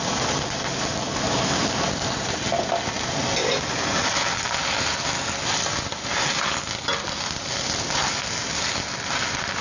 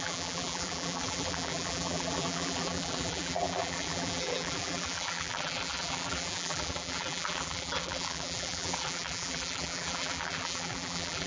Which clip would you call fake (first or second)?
second